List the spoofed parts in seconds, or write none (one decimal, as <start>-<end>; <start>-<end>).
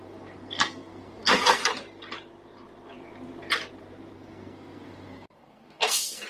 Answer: 0.0-1.6; 4.1-6.3